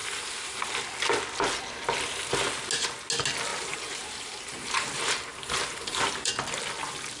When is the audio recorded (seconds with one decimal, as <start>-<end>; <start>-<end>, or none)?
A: 0.6-3.5; 6.3-7.2